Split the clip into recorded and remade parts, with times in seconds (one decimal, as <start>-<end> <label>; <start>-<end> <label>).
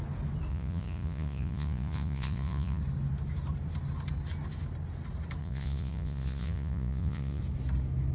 0.0-0.5 recorded; 0.5-2.8 remade; 2.8-5.4 recorded; 5.4-7.4 remade; 7.4-8.1 recorded